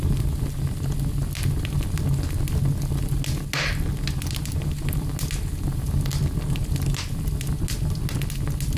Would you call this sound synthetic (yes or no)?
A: no